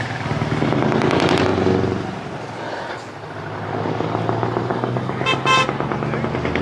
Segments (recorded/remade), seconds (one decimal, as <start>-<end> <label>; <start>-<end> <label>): 0.0-4.7 recorded; 4.7-5.2 remade; 5.2-6.6 recorded